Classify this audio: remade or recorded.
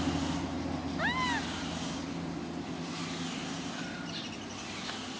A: recorded